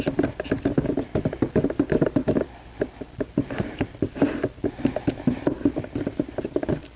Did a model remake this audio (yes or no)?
no